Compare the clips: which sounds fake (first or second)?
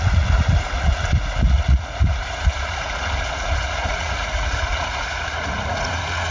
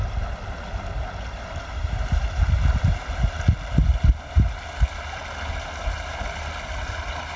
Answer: first